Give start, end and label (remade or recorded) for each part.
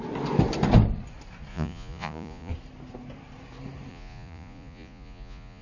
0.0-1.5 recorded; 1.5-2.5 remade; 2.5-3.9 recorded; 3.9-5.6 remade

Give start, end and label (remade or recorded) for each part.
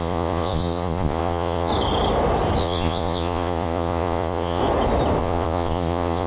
0.0-1.7 remade; 1.7-2.6 recorded; 2.6-4.6 remade; 4.6-5.2 recorded; 5.2-6.3 remade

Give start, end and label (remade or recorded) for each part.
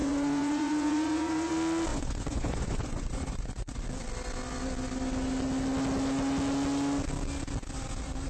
0.0-1.5 remade; 1.5-1.9 recorded; 1.9-3.8 remade; 3.8-8.3 recorded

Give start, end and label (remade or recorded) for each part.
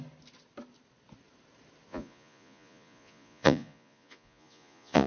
0.0-1.9 recorded; 1.9-5.1 remade